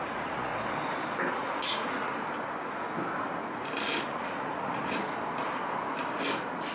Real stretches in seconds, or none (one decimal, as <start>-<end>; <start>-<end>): 0.5-1.3; 2.1-4.0; 4.8-6.7